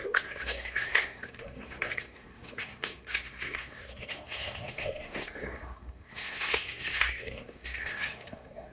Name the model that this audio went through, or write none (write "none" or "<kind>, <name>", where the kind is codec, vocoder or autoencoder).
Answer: codec, SNAC